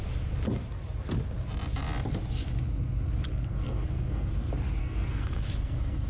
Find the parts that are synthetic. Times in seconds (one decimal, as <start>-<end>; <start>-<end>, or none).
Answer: 3.3-4.3; 4.8-6.1